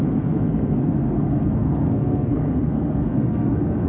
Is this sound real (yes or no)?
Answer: no